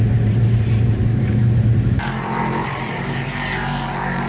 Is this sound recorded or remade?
remade